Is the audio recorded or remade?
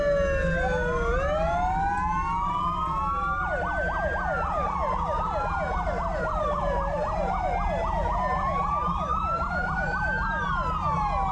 recorded